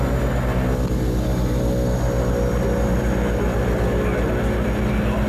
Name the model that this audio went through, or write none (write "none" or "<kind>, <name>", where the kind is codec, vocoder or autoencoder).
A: none